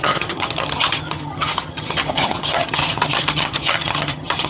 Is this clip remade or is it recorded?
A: remade